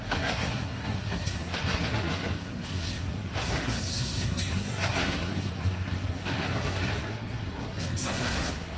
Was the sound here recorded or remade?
remade